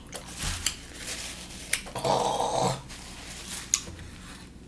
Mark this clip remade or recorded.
recorded